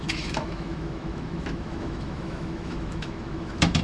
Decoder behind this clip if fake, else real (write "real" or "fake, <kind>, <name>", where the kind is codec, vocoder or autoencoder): fake, autoencoder, DAC-VAE